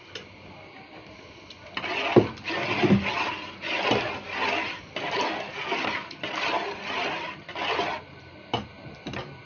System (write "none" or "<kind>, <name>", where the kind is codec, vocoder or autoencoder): none